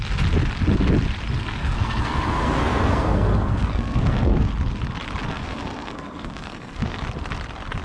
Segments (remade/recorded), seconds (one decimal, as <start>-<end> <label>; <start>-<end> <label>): 0.0-1.6 recorded; 1.6-4.5 remade; 4.5-5.3 recorded; 5.3-7.0 remade; 7.0-7.8 recorded